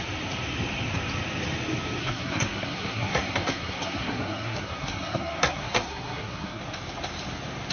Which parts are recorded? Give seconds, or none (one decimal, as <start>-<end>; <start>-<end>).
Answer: 0.0-2.0; 6.6-7.7